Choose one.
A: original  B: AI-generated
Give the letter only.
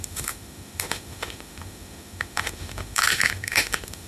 B